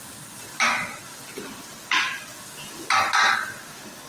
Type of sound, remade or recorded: recorded